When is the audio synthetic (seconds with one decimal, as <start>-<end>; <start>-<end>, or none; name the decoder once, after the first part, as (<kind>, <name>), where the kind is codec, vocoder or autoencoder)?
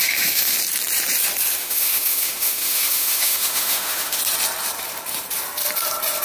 0.0-0.6 (autoencoder, DAC-VAE); 1.6-4.2